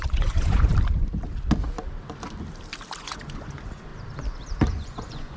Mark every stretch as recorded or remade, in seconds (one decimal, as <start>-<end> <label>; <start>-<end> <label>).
0.0-0.7 remade; 0.7-3.0 recorded; 3.0-3.9 remade; 3.9-4.7 recorded; 4.7-5.4 remade